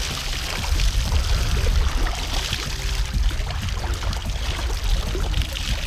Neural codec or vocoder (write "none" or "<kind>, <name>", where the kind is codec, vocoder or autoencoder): none